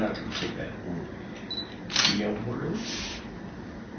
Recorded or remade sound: recorded